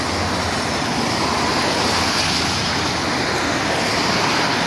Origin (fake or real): real